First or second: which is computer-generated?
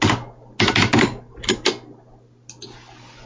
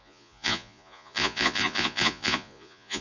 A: second